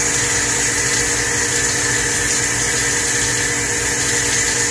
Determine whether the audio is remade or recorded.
recorded